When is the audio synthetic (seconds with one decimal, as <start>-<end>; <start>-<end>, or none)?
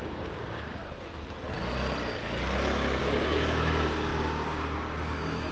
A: 0.0-0.8; 3.0-5.5